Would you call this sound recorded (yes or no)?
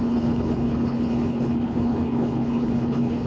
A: no